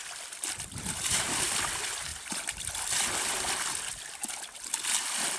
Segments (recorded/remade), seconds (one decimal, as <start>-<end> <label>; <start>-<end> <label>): 0.0-5.4 recorded